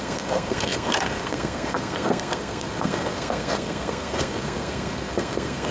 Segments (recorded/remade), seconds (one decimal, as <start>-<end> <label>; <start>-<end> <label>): 0.0-5.7 remade